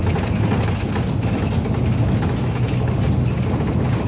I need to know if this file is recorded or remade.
recorded